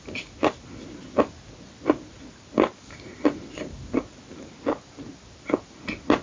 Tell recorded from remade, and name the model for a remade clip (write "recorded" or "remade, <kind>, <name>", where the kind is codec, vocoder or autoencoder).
recorded